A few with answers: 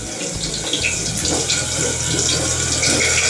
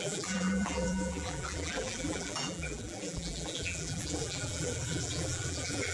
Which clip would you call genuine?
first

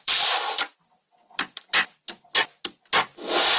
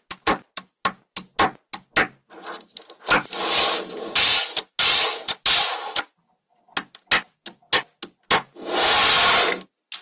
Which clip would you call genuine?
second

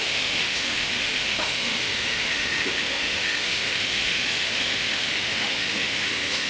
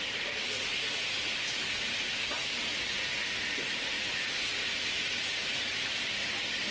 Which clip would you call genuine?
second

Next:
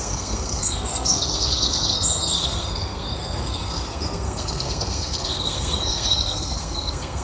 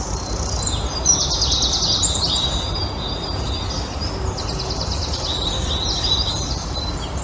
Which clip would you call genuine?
second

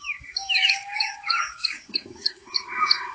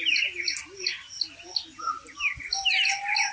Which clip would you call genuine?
second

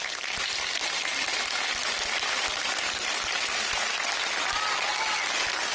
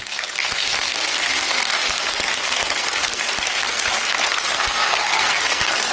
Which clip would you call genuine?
first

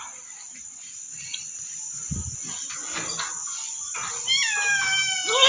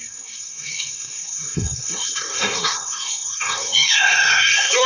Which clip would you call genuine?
first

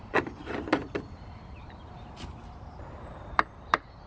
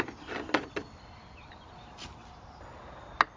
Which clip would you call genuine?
second